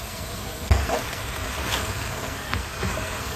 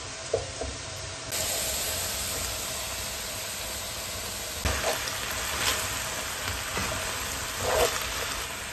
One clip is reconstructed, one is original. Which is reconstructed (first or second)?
first